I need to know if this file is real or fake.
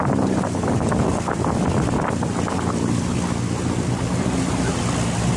real